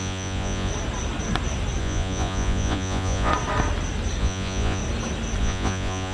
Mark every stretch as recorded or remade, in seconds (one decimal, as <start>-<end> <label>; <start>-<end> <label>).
0.0-0.7 remade; 0.7-1.8 recorded; 1.8-3.3 remade; 3.3-4.2 recorded; 4.2-4.8 remade; 4.8-5.4 recorded; 5.4-6.1 remade